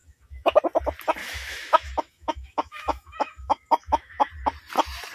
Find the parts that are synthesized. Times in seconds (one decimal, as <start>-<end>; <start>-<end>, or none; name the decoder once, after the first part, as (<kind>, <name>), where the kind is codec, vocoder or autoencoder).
0.0-0.6 (autoencoder, DAC-VAE); 1.2-4.3